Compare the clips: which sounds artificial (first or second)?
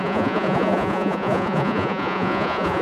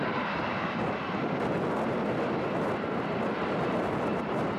first